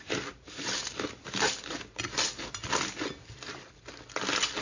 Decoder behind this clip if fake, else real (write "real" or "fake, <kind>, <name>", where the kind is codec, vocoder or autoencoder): real